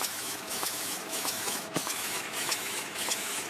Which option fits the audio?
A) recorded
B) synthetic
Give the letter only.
B